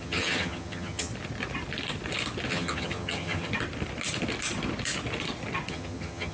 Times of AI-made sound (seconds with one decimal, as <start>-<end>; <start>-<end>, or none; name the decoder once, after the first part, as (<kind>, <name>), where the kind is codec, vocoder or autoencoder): 0.0-1.1 (vocoder, HiFi-GAN); 2.5-3.5; 5.7-6.3